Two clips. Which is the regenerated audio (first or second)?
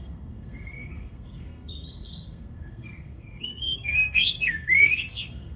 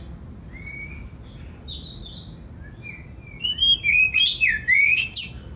first